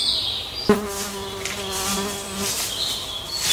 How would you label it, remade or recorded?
recorded